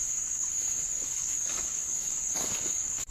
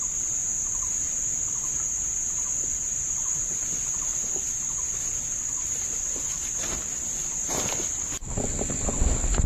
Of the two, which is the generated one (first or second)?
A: first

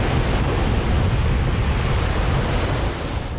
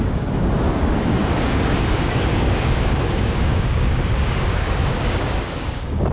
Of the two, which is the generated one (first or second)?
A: second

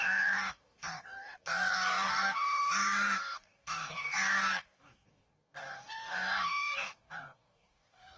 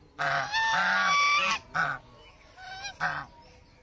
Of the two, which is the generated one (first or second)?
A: first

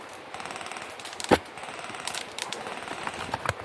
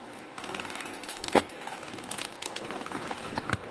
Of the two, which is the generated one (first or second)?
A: second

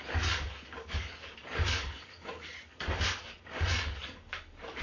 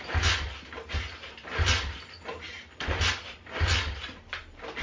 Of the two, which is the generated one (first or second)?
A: first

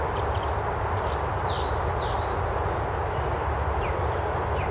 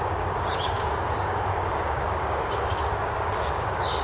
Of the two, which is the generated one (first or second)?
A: second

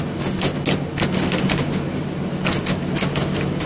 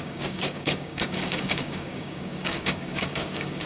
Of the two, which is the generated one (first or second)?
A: second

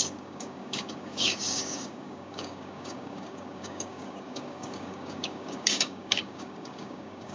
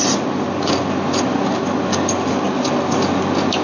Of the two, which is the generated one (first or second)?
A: first